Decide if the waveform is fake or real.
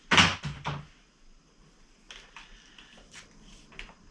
real